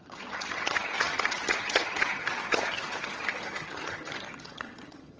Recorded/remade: remade